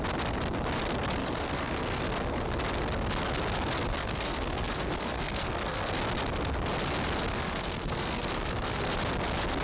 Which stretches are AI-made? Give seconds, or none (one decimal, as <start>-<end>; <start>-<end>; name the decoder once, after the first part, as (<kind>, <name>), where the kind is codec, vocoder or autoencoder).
1.2-2.0 (codec, SNAC); 3.9-5.9; 7.3-8.8